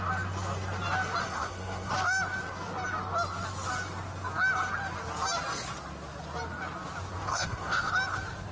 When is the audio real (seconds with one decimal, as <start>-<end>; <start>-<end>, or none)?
0.0-1.2; 1.9-7.3; 7.9-8.5